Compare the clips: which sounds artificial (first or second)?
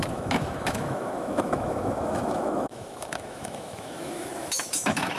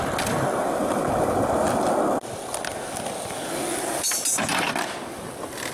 first